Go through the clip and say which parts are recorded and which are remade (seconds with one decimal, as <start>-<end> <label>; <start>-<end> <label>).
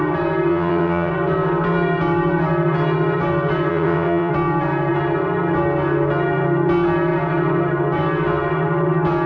0.0-0.5 recorded; 0.5-1.1 remade; 1.1-3.7 recorded; 3.7-4.3 remade; 4.3-9.3 recorded